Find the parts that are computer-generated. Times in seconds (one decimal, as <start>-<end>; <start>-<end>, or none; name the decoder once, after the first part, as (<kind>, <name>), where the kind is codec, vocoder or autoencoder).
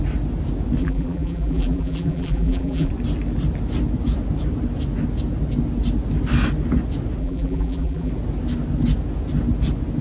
0.8-2.9 (vocoder, BigVGAN v2); 7.2-8.1